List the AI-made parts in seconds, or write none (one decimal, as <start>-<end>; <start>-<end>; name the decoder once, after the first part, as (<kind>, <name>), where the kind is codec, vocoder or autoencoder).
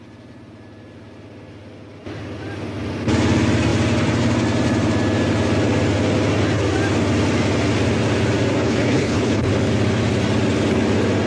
8.5-9.5 (codec, HILCodec)